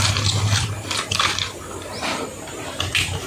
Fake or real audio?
fake